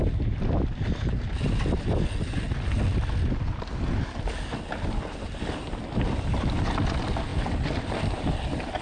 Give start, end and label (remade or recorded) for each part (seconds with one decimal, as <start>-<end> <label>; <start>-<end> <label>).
0.0-8.8 recorded